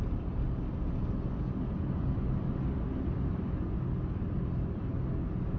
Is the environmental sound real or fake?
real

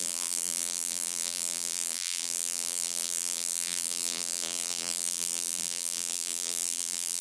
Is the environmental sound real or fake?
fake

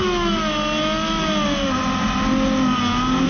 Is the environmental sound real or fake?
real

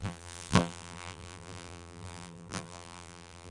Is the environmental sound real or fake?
fake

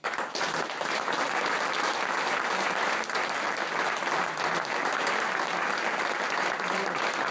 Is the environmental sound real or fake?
real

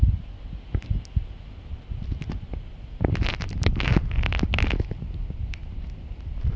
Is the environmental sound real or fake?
real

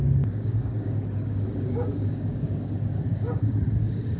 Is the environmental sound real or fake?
fake